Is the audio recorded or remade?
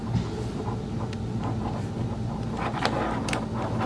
recorded